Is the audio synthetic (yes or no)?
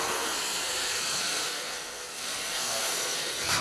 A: yes